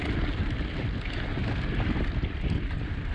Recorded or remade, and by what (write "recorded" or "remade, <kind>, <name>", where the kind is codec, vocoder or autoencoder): recorded